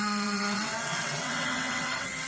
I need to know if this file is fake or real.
fake